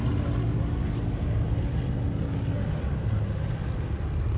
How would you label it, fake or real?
real